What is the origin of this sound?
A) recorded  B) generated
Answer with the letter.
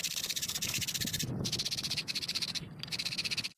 A